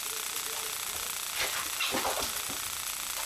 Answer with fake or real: real